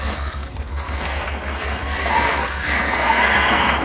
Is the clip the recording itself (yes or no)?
no